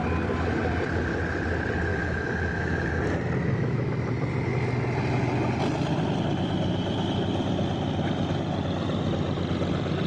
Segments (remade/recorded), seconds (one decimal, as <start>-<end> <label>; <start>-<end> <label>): 0.0-1.9 recorded; 1.9-2.9 remade; 2.9-3.4 recorded; 3.4-3.9 remade; 3.9-10.1 recorded